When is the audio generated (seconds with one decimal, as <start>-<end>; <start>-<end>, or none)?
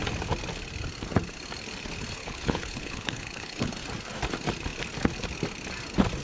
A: 2.2-3.7